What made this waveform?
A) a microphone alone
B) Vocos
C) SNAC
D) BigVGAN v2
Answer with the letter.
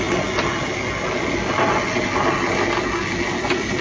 A